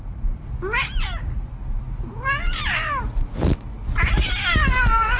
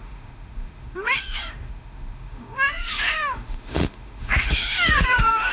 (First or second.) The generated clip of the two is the second